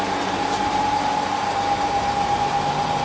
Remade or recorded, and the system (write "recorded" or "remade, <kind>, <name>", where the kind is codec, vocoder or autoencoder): remade, vocoder, BigVGAN v2